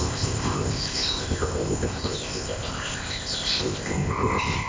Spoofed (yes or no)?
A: yes